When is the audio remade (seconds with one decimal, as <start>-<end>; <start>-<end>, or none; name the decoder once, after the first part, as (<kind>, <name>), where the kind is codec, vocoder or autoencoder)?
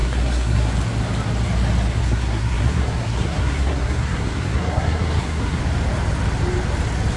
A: 0.0-0.7 (codec, SNAC); 2.0-5.6